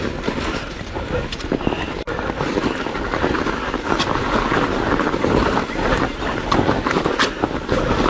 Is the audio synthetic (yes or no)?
no